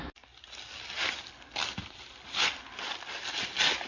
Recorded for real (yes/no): yes